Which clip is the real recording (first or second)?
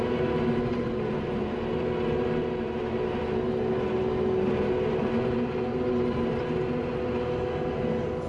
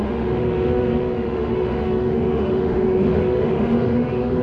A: first